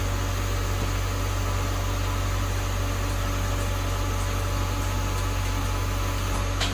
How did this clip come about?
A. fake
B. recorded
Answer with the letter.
B